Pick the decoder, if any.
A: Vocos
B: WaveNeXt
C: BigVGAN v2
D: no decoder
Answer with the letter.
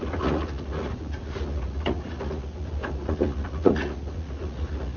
A